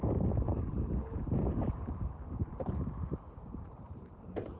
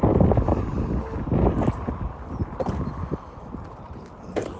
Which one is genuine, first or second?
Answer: second